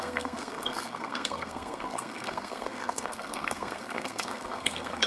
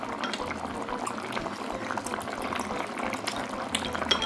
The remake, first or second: first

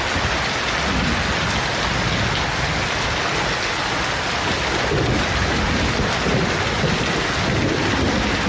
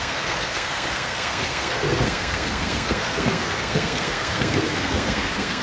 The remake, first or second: second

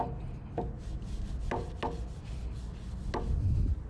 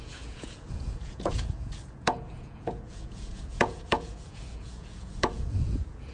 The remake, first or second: second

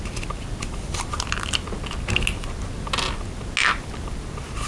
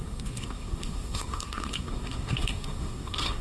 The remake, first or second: second